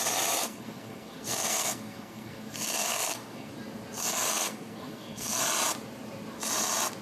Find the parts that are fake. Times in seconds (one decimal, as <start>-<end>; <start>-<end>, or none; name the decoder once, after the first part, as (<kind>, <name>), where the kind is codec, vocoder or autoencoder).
0.4-3.5 (codec, SNAC); 4.0-5.4